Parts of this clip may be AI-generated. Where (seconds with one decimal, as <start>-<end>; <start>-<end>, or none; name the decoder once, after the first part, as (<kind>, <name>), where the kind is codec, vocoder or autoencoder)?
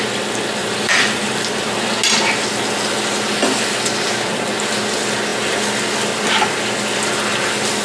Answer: 0.6-1.5 (vocoder, BigVGAN v2)